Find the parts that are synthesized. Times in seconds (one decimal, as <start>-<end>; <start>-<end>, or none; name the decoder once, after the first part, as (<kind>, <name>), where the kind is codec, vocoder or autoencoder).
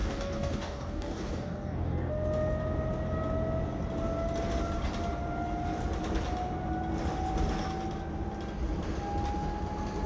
0.0-2.1 (codec, DAC)